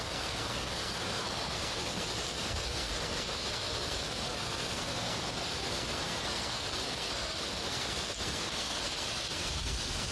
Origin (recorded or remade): remade